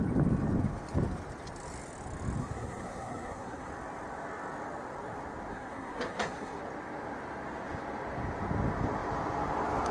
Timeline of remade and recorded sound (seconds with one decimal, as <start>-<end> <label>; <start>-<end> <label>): 0.0-2.4 recorded; 2.4-3.7 remade; 3.7-5.5 recorded; 5.5-6.6 remade; 6.6-9.9 recorded